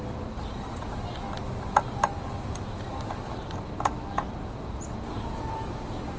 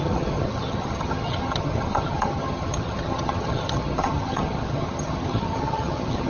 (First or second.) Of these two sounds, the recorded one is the first